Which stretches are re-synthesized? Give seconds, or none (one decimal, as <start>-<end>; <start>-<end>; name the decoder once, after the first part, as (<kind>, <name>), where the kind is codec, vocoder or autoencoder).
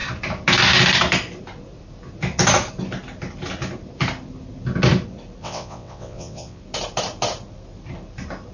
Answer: 5.4-6.6 (vocoder, WaveNeXt)